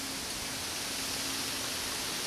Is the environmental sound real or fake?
real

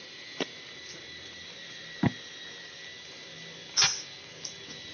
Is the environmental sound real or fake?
fake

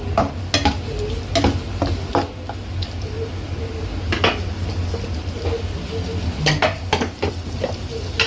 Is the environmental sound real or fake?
real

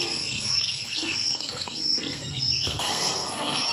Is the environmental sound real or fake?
fake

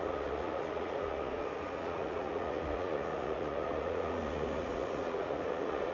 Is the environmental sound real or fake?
fake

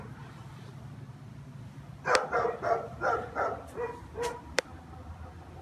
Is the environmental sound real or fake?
fake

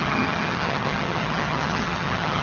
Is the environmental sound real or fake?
fake